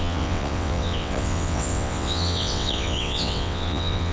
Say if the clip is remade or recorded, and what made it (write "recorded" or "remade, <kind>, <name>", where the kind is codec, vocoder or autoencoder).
remade, vocoder, WaveNeXt